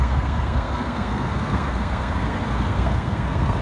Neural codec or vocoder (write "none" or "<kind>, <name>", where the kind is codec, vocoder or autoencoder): codec, SNAC